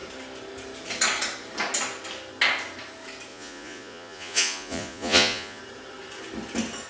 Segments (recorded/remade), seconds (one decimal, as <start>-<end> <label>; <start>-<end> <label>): 0.0-3.3 recorded; 3.3-5.6 remade; 5.6-6.9 recorded